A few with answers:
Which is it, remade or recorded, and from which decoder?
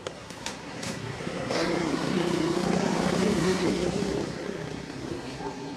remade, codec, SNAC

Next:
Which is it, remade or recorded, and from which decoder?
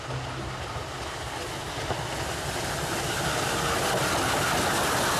recorded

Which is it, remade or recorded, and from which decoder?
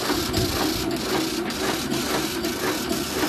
recorded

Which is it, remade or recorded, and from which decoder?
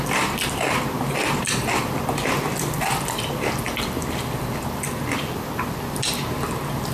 remade, vocoder, BigVGAN v2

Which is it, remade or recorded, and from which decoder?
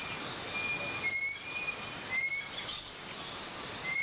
recorded